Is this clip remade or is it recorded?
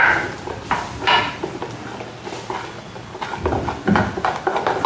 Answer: recorded